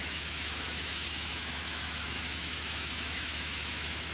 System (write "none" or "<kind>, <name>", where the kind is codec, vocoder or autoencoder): autoencoder, DAC-VAE